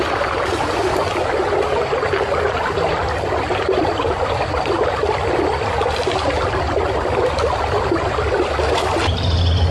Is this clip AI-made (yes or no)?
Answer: no